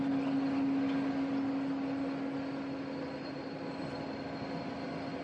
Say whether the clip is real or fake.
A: real